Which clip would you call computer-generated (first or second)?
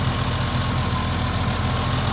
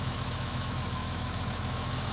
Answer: second